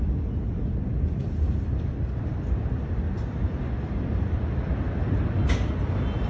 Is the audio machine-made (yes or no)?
no